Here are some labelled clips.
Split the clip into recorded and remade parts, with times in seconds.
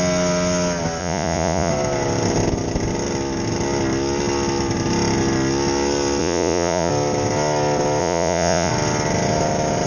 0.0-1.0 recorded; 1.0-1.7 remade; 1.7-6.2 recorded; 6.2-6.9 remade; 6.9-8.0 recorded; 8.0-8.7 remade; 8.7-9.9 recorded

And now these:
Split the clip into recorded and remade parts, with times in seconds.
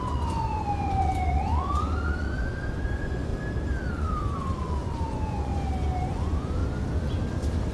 0.0-3.3 remade; 3.3-3.9 recorded; 3.9-5.5 remade; 5.5-6.1 recorded; 6.1-6.6 remade; 6.6-7.7 recorded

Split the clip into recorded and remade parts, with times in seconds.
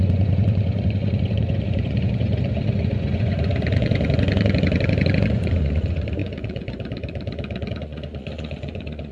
0.0-9.1 remade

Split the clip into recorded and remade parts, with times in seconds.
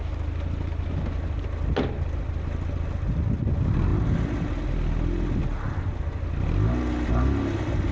0.0-7.9 recorded